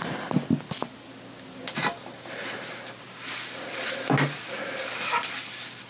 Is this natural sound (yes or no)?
yes